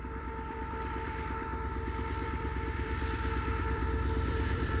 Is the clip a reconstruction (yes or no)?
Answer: yes